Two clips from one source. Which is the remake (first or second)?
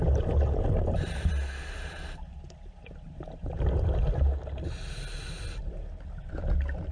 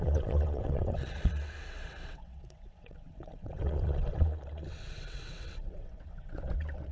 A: second